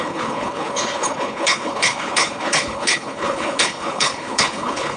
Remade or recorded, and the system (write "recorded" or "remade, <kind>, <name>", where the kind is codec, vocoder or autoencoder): remade, codec, HILCodec